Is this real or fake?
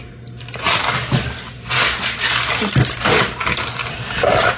real